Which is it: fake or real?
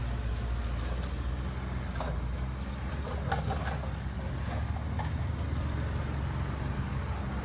real